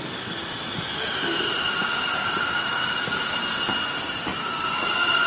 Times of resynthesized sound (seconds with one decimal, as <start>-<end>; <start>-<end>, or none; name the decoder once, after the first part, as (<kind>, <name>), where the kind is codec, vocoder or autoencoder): 0.4-3.6 (vocoder, BigVGAN v2); 4.3-5.3